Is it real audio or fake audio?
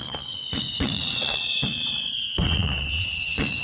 fake